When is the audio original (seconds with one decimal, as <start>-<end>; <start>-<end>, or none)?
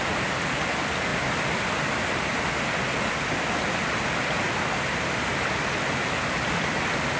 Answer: 0.0-7.2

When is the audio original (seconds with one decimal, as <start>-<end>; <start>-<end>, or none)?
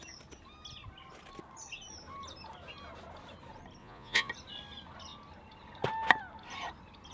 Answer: 0.0-3.8; 4.3-7.1